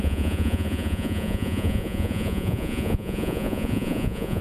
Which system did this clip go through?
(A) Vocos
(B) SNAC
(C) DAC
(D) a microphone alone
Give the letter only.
A